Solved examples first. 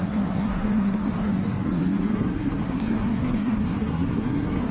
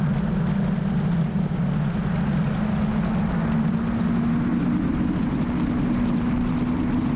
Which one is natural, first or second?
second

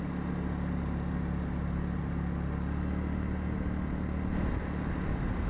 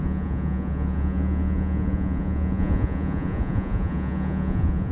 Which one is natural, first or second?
first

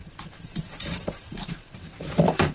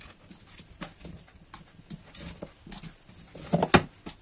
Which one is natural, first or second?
second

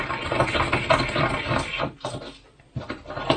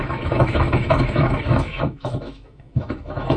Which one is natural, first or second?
first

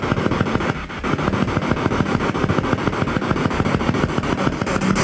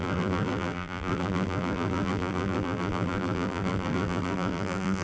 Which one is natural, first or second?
first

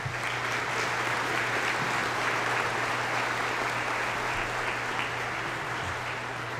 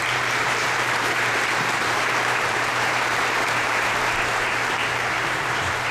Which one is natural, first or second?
first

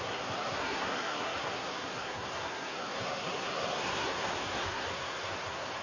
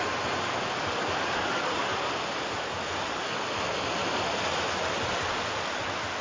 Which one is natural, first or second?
second